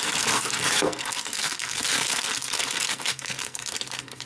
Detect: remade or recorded remade